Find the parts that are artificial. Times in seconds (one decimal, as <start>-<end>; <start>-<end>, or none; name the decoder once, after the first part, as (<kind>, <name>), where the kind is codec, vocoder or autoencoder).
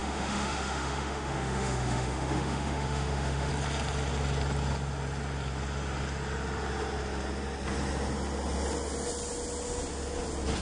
0.0-3.5 (autoencoder, DAC-VAE)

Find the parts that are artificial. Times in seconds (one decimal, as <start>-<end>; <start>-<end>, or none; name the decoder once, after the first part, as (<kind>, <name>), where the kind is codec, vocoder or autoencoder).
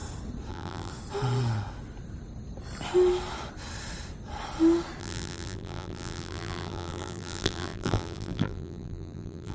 0.5-0.9 (vocoder, BigVGAN v2); 5.0-9.5